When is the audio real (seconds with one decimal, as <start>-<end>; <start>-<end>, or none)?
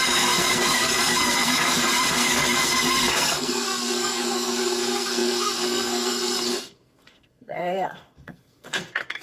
none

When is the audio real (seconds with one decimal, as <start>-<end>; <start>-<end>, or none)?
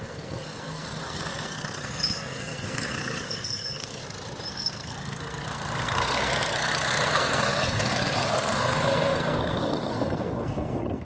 4.0-4.5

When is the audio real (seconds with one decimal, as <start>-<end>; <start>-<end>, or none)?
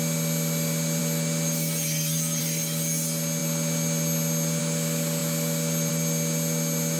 0.0-7.0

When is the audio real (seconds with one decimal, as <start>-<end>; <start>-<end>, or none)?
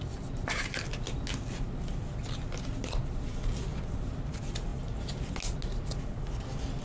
0.0-6.8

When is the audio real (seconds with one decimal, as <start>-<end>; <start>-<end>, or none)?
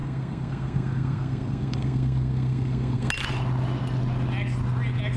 3.1-5.2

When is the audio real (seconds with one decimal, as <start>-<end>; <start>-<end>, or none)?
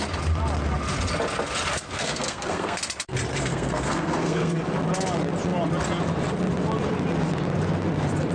0.0-1.7; 2.8-3.3; 4.5-8.3